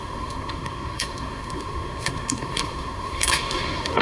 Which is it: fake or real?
fake